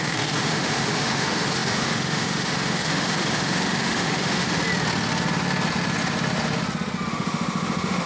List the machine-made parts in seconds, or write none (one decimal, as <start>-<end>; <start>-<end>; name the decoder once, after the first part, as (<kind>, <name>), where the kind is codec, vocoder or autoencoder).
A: 0.0-4.6 (autoencoder, DAC-VAE); 7.1-8.1